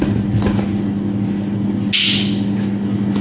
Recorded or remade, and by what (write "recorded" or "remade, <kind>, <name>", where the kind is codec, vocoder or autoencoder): recorded